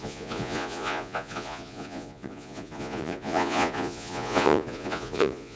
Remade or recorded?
remade